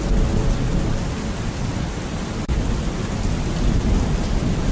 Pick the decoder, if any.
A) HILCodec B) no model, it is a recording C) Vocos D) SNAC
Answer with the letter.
B